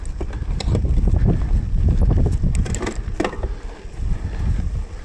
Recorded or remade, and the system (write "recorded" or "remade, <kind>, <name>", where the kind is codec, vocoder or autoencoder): recorded